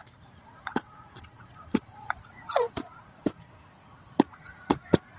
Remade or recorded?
remade